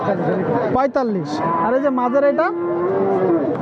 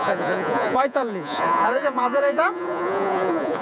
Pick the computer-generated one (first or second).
second